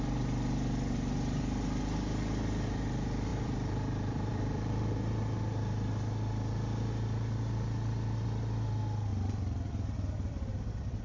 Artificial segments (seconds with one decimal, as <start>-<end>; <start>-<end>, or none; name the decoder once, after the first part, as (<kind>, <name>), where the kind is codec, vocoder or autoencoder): 3.3-4.8 (vocoder, BigVGAN v2); 9.1-11.0

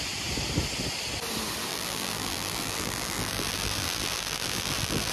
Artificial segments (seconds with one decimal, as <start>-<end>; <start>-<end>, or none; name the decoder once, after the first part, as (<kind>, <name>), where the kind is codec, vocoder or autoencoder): 1.7-5.1 (vocoder, BigVGAN v2)